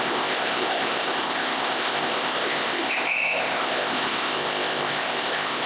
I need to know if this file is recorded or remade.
remade